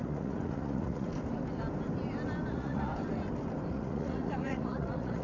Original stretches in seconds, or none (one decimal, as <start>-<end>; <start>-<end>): 1.1-2.5; 2.9-3.7